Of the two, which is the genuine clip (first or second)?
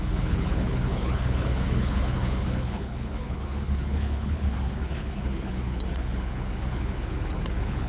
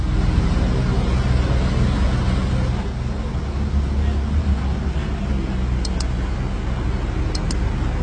second